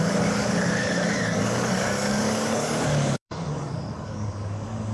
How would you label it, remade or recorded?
remade